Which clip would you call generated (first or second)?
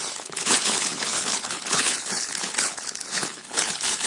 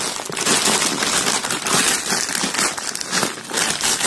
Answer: first